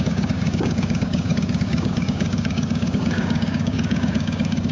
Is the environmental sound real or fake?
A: fake